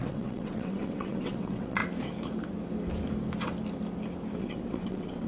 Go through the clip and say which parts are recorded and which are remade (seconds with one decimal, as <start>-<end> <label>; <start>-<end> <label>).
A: 0.0-1.8 remade; 1.8-4.4 recorded; 4.4-5.3 remade

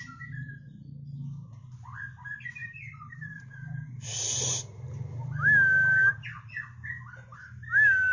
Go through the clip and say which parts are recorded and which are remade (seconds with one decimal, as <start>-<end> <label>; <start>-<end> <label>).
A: 0.0-2.6 recorded; 2.6-3.4 remade; 3.4-8.1 recorded

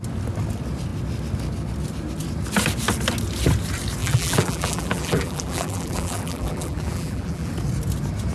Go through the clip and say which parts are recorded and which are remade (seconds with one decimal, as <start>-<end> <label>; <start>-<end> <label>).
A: 0.0-4.0 recorded; 4.0-7.5 remade; 7.5-8.3 recorded

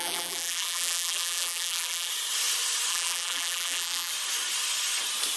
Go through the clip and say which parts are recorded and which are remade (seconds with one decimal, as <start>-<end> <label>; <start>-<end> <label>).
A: 0.0-2.1 remade; 2.1-2.9 recorded; 2.9-4.1 remade; 4.1-5.4 recorded

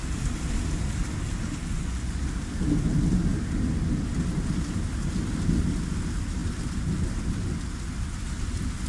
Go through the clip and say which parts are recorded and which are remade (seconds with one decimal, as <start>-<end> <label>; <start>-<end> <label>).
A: 0.0-1.6 recorded; 1.6-2.2 remade; 2.2-8.9 recorded

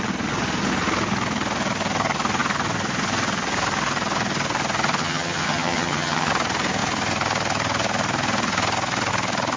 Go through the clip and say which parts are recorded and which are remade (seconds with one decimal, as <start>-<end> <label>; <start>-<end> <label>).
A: 0.0-5.0 recorded; 5.0-6.3 remade; 6.3-9.6 recorded

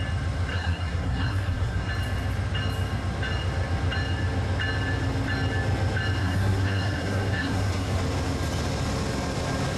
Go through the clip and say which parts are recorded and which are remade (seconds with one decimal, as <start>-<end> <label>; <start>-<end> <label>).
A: 0.0-0.5 recorded; 0.5-1.9 remade; 1.9-6.2 recorded; 6.2-8.0 remade; 8.0-9.8 recorded

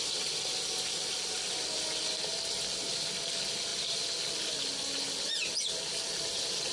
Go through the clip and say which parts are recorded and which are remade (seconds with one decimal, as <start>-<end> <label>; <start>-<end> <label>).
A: 0.0-6.7 recorded